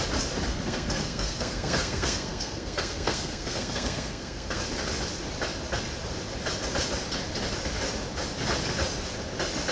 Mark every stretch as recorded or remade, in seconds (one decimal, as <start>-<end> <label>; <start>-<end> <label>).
0.0-0.5 recorded; 0.5-4.6 remade; 4.6-9.7 recorded